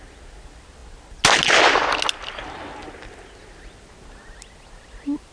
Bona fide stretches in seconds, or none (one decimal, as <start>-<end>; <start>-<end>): 0.0-5.3